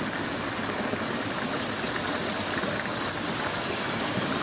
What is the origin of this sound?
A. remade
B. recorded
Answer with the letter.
B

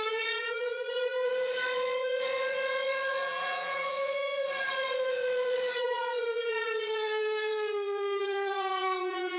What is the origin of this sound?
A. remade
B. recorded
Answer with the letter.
A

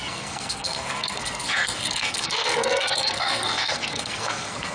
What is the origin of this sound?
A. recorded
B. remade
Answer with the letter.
B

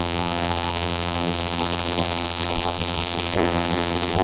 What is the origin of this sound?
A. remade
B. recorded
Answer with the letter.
A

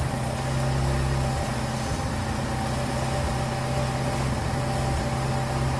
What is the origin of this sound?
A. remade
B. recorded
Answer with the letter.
B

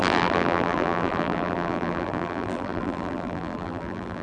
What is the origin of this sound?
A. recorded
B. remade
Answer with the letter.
B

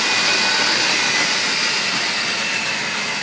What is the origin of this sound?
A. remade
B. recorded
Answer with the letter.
B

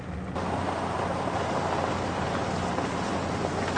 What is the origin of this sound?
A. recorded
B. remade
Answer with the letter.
A